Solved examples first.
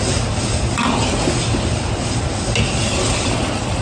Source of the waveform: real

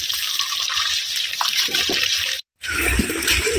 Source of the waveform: fake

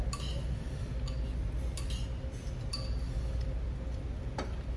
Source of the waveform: real